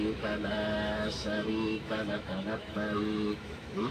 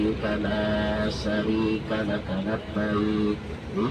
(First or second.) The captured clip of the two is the second